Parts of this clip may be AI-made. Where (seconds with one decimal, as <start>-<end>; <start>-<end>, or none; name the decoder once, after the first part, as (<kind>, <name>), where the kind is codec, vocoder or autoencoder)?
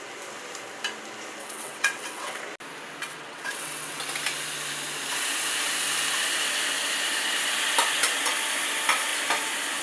1.4-2.4 (vocoder, WaveNeXt); 3.0-4.0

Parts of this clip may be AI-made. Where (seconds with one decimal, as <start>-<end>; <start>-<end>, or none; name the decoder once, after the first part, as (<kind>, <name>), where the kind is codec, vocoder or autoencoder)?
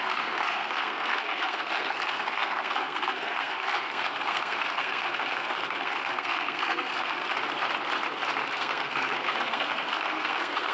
0.0-7.3 (codec, SNAC); 8.5-10.7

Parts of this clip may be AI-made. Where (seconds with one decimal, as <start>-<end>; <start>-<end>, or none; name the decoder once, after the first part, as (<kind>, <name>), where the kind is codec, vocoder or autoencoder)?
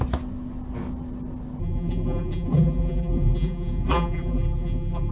1.6-5.1 (vocoder, BigVGAN v2)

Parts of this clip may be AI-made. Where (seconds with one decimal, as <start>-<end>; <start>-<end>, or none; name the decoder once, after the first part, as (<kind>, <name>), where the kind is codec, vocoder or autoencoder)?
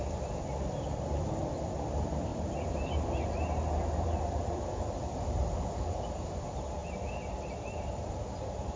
0.0-6.8 (vocoder, BigVGAN v2); 7.9-8.8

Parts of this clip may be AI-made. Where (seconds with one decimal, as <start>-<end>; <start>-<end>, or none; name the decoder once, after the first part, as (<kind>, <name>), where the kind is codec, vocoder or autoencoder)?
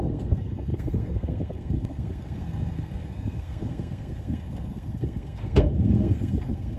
0.0-6.8 (codec, SNAC)